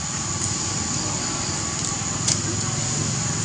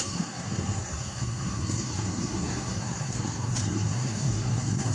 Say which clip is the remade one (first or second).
second